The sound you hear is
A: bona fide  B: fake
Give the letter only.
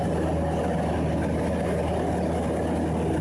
A